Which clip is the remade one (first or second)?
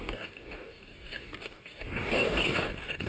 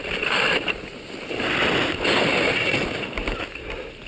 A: first